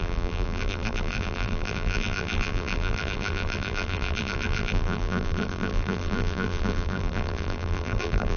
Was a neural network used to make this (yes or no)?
yes